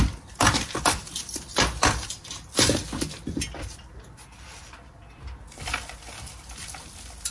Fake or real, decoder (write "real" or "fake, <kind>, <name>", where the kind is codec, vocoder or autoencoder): fake, vocoder, BigVGAN v2